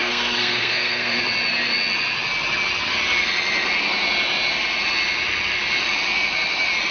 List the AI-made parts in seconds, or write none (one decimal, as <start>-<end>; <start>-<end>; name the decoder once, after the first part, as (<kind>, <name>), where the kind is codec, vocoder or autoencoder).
0.0-1.2 (codec, SNAC)